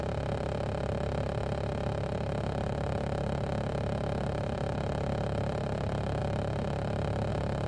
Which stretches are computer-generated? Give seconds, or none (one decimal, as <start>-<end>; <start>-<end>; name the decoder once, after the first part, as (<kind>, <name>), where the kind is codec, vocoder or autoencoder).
0.0-7.7 (vocoder, BigVGAN v2)